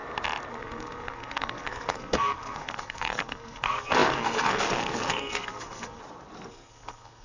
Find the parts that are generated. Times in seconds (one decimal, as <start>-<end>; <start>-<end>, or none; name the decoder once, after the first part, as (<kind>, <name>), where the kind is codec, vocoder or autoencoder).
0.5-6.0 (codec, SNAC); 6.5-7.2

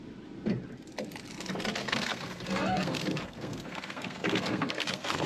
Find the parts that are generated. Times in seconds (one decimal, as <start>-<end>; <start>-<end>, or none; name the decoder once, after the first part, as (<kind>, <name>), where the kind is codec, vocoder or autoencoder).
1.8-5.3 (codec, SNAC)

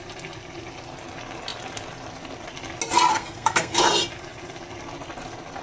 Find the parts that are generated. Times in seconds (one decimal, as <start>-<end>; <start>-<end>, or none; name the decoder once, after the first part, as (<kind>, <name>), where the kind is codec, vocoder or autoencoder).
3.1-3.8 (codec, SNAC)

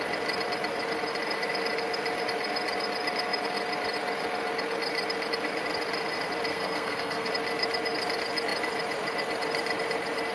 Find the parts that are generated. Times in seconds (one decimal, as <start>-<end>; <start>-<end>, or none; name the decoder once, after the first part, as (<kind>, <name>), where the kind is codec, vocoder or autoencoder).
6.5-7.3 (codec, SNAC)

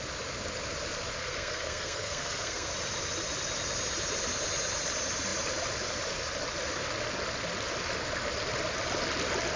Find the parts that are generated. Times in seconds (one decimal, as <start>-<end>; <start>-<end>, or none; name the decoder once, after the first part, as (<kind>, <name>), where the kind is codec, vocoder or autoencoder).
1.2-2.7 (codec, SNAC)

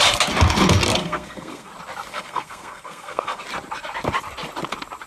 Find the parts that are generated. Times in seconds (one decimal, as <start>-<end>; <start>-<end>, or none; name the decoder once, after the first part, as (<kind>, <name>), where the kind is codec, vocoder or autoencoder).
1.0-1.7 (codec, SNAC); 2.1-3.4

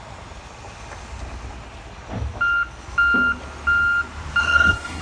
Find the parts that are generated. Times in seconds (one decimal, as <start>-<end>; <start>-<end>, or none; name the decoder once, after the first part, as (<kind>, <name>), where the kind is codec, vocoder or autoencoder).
4.4-5.0 (codec, SNAC)

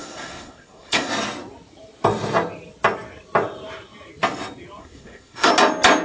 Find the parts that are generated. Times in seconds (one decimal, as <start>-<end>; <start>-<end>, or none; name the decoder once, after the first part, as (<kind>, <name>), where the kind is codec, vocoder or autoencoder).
0.0-1.1 (codec, SNAC); 4.8-5.5